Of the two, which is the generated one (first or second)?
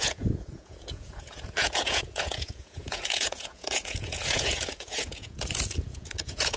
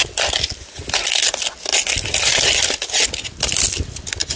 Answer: first